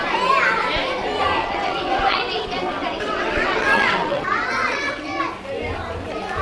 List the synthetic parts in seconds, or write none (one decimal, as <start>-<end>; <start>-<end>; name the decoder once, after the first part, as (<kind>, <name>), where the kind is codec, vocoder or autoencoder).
1.4-5.2 (vocoder, WaveNeXt)

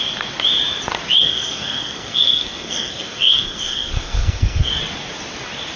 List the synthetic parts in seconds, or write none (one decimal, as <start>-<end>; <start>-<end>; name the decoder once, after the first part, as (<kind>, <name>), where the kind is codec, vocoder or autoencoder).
1.2-4.7 (codec, SNAC)